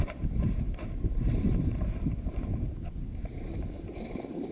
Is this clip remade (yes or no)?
yes